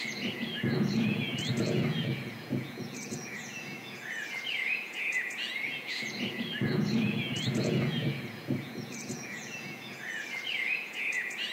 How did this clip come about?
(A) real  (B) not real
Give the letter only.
B